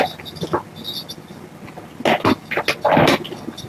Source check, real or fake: real